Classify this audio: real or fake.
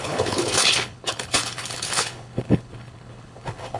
fake